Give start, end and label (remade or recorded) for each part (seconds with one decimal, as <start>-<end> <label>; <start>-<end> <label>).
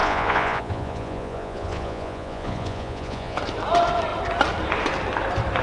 0.0-3.4 remade; 3.4-5.6 recorded